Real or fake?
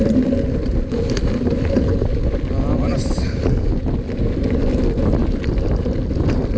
real